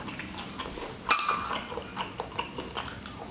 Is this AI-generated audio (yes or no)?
no